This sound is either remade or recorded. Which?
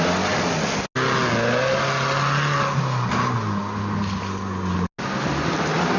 recorded